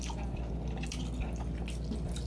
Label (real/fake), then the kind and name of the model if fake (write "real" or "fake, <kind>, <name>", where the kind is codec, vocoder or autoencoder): real